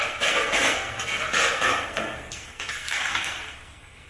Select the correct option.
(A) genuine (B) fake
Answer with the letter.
B